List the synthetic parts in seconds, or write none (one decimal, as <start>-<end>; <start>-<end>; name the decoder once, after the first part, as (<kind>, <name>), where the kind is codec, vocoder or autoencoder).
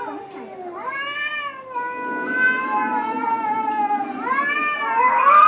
none